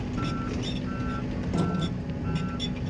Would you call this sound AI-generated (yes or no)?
no